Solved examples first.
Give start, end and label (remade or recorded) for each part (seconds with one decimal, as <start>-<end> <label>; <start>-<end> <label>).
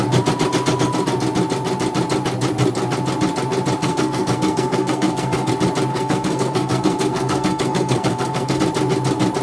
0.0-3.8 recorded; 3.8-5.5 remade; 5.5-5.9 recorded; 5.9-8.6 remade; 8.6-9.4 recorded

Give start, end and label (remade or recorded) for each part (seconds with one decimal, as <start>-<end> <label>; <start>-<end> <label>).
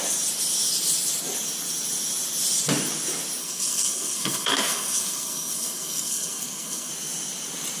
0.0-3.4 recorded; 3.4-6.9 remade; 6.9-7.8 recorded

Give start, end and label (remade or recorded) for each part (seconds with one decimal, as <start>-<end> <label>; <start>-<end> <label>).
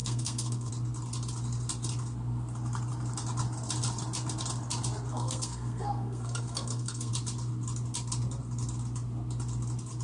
0.0-0.7 remade; 0.7-5.1 recorded; 5.1-7.1 remade; 7.1-10.0 recorded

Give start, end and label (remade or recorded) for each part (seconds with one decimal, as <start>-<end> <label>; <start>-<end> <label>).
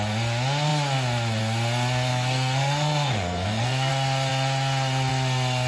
0.0-2.1 recorded; 2.1-3.9 remade; 3.9-5.7 recorded